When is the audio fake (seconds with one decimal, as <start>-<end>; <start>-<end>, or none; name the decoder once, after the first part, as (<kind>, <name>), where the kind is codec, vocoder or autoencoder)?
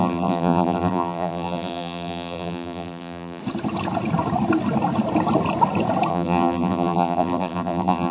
0.0-3.4 (vocoder, BigVGAN v2); 6.1-8.1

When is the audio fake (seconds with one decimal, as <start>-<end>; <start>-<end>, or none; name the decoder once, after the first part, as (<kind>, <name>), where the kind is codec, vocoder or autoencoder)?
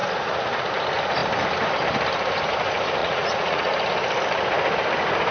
0.0-0.7 (vocoder, Vocos); 3.0-3.7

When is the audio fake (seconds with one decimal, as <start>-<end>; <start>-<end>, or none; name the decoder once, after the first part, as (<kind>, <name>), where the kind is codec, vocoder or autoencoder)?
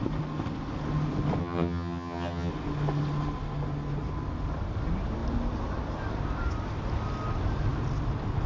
1.4-2.5 (vocoder, HiFi-GAN)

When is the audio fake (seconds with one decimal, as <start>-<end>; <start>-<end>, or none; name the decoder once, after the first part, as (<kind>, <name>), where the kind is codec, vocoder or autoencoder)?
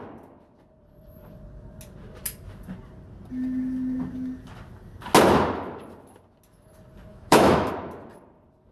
7.1-7.7 (autoencoder, DAC-VAE)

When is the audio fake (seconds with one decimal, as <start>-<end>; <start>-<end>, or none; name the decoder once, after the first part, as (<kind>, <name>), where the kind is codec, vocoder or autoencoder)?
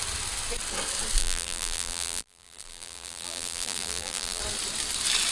1.2-4.4 (vocoder, BigVGAN v2)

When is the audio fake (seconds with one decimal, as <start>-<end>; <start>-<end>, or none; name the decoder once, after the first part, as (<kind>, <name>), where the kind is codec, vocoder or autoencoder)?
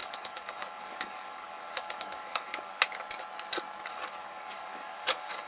0.0-2.7 (codec, DAC); 3.9-5.5